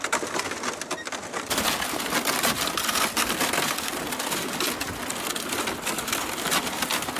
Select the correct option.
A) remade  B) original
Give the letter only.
B